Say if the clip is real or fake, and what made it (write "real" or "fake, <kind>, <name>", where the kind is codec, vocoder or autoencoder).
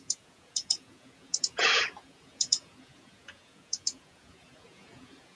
fake, vocoder, Vocos